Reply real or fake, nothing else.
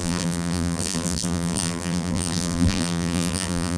fake